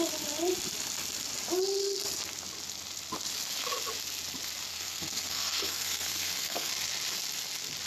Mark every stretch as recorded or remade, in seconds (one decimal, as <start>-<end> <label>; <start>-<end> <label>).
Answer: 0.0-4.7 recorded; 4.7-6.7 remade; 6.7-7.9 recorded